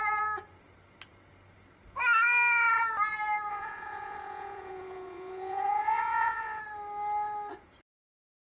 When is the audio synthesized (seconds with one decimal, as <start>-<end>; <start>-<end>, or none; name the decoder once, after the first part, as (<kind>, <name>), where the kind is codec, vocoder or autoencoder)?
3.5-6.6 (vocoder, Vocos)